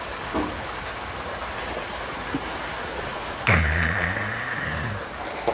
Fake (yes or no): no